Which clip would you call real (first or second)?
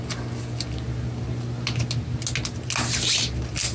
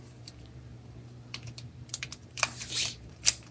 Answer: first